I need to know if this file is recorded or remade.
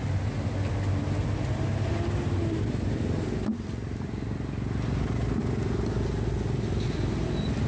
recorded